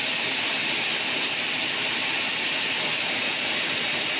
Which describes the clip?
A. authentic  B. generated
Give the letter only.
A